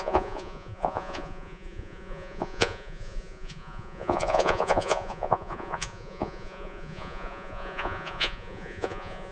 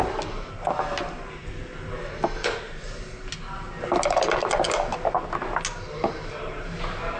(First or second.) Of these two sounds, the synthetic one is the first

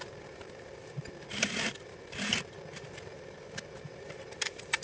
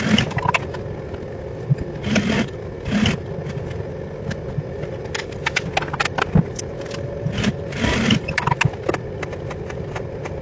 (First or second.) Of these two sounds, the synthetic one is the first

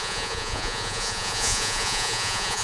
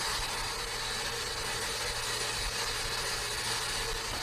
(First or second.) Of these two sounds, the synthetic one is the first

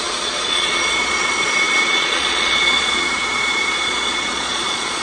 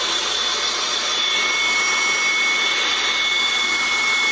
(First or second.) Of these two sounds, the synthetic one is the first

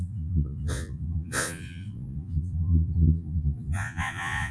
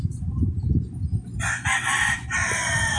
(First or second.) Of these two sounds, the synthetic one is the first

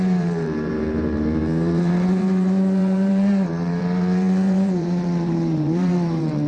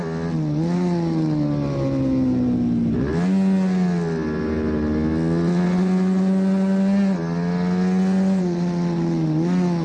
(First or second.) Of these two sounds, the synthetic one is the first